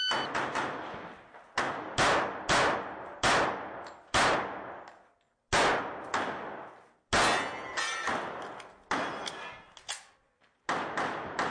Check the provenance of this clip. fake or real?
real